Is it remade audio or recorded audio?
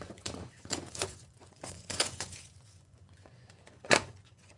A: remade